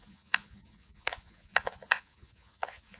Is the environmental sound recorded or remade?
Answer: remade